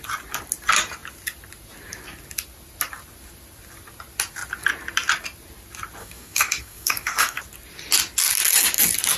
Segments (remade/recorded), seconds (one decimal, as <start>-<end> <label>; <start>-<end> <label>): 0.0-6.0 recorded; 6.0-7.4 remade; 7.4-9.2 recorded